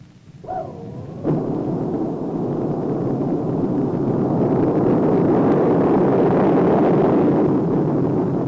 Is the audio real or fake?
real